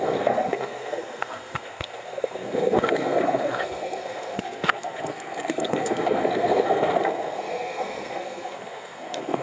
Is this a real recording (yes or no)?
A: no